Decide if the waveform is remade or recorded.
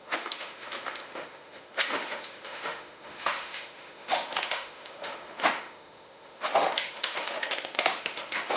remade